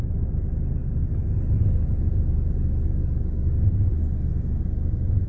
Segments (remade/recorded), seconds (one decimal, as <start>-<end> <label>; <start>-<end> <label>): 0.0-5.3 recorded